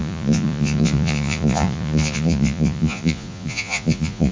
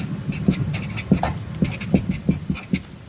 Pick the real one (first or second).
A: second